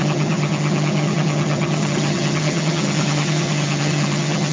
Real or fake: fake